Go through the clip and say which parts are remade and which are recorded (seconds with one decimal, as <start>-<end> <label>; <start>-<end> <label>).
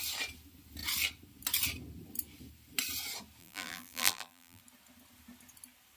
0.0-3.4 recorded; 3.4-4.6 remade; 4.6-6.0 recorded